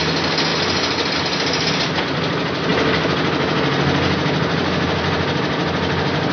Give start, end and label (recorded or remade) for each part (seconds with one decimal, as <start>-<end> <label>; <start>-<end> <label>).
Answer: 0.0-6.3 recorded